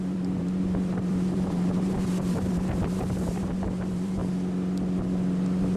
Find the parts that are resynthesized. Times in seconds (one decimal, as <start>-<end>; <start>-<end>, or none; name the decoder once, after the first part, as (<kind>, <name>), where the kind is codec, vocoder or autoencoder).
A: 0.0-4.2 (vocoder, BigVGAN v2)